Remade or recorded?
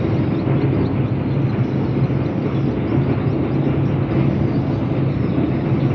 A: recorded